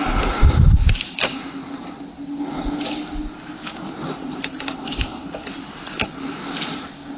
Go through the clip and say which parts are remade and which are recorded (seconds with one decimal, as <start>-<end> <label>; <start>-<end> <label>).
0.0-1.6 remade; 1.6-4.2 recorded; 4.2-6.4 remade; 6.4-7.2 recorded